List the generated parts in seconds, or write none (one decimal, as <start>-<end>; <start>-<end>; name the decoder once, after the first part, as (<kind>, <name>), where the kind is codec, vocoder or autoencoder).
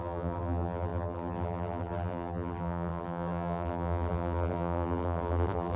0.0-5.8 (vocoder, BigVGAN v2)